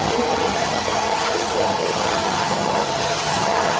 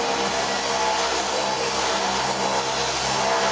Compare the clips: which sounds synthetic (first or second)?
first